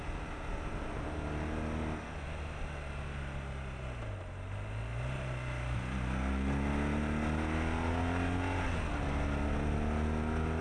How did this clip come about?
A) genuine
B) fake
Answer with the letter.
A